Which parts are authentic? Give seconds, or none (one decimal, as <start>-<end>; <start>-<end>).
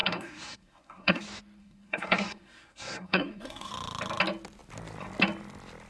1.2-1.6; 3.7-5.9